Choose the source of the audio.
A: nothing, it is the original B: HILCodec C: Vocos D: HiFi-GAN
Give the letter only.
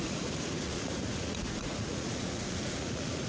C